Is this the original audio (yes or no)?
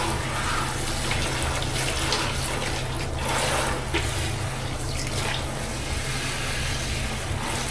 yes